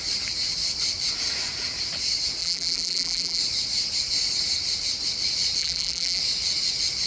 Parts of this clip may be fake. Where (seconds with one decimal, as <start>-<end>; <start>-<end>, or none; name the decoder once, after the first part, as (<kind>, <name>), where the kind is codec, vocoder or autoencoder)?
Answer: 2.4-3.4 (vocoder, BigVGAN v2); 5.6-6.2